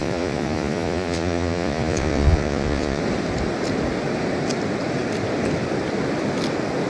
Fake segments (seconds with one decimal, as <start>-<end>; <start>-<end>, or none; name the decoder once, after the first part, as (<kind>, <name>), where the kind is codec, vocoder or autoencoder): 0.0-3.0 (vocoder, Vocos)